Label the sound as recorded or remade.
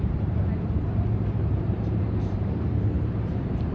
remade